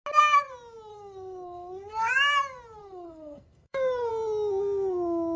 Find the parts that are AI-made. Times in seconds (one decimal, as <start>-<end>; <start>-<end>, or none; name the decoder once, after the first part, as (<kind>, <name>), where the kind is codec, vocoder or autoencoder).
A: 0.9-2.1 (codec, SNAC); 2.8-4.1